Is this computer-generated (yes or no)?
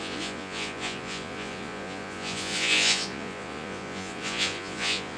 yes